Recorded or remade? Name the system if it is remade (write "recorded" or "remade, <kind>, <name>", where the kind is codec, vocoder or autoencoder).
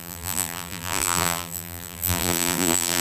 remade, vocoder, BigVGAN v2